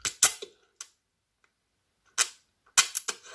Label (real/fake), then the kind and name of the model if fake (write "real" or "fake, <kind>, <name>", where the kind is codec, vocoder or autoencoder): real